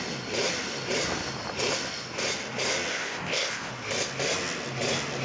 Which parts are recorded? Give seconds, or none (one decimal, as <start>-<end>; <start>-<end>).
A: 0.0-2.9; 3.7-5.2